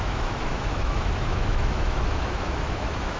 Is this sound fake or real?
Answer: fake